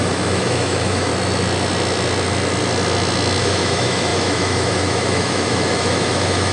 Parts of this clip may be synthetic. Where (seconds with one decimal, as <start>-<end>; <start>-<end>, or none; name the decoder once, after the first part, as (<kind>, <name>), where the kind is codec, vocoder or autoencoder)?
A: 0.0-1.1 (autoencoder, DAC-VAE); 3.4-6.5